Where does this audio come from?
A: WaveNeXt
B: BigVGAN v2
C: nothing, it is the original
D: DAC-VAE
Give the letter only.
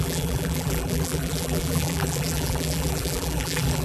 B